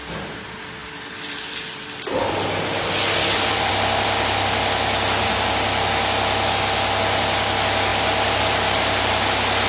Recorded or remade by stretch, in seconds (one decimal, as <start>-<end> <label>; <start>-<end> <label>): 0.0-0.8 recorded; 0.8-3.7 remade; 3.7-7.9 recorded; 7.9-9.1 remade; 9.1-9.7 recorded